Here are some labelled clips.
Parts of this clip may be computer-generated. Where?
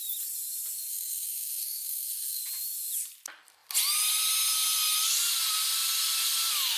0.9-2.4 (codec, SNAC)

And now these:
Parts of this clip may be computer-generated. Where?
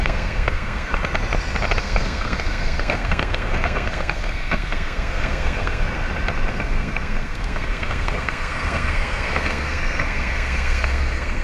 0.0-0.9 (codec, SNAC); 1.8-5.9; 6.5-11.4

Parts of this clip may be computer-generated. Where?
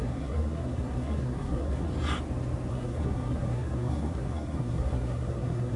0.0-1.9 (codec, SNAC); 2.7-5.8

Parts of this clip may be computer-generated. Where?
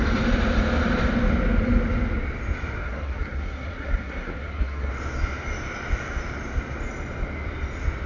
2.8-4.9 (codec, SNAC)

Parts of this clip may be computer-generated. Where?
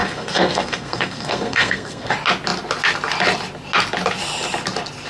0.0-2.1 (codec, SNAC)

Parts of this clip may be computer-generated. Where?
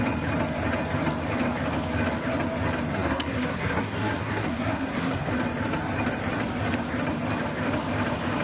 2.9-5.3 (codec, SNAC)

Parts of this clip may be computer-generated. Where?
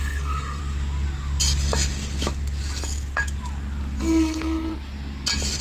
0.0-0.6 (codec, SNAC); 4.0-4.7